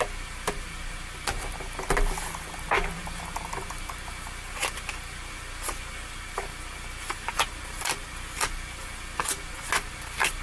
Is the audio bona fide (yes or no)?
yes